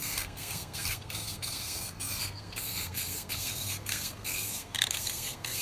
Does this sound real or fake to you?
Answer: fake